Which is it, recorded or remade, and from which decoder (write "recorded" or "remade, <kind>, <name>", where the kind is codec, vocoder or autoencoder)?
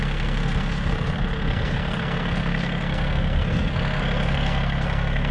remade, codec, SNAC